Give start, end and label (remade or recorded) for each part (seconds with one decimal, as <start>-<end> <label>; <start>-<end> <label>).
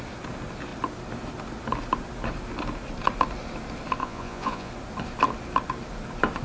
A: 0.0-4.0 recorded; 4.0-4.7 remade; 4.7-6.4 recorded